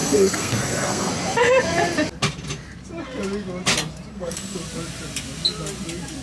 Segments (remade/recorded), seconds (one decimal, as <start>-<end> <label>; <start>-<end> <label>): 0.0-1.1 remade; 1.1-4.1 recorded; 4.1-4.6 remade; 4.6-6.2 recorded